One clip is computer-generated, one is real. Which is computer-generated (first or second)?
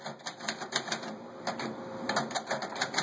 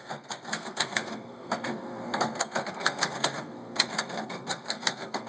second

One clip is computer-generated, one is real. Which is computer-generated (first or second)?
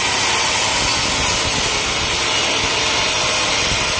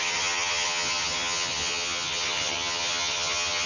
second